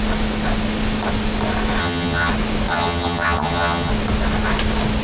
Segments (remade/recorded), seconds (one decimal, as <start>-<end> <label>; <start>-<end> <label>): 0.0-1.8 recorded; 1.8-2.3 remade; 2.3-2.7 recorded; 2.7-3.9 remade; 3.9-5.0 recorded